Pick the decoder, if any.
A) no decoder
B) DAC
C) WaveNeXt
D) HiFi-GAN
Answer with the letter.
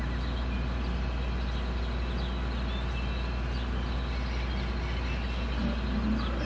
A